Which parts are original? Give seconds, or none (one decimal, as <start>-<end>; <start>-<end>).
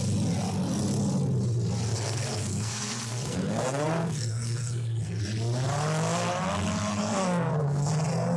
0.0-1.9; 5.2-6.9; 7.9-8.4